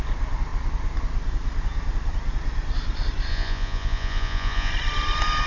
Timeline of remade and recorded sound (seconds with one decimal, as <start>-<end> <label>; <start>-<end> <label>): 0.0-3.3 recorded; 3.3-4.7 remade; 4.7-5.5 recorded